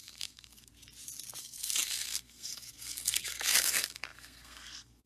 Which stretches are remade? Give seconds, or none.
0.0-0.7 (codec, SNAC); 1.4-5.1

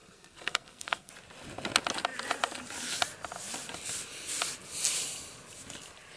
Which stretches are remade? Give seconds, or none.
0.0-1.1 (codec, SNAC)

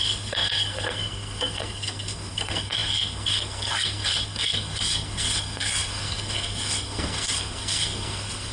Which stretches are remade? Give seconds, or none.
0.0-8.5 (codec, SNAC)

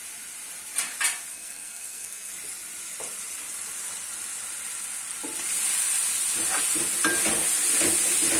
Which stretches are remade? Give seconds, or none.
1.3-2.3 (codec, SNAC)

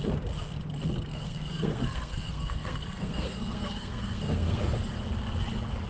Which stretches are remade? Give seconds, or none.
1.1-4.6 (codec, SNAC)

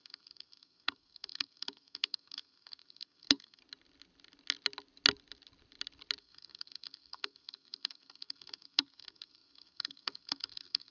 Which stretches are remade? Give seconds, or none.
0.0-3.6 (codec, SNAC); 6.2-10.9